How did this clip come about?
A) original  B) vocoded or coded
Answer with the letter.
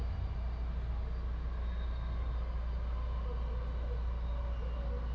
A